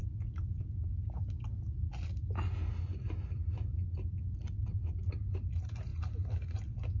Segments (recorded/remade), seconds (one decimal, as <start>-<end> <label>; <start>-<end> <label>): 0.0-7.0 recorded